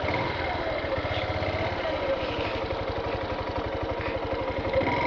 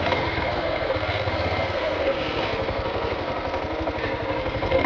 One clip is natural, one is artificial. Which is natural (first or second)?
first